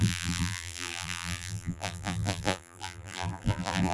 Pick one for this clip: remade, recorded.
remade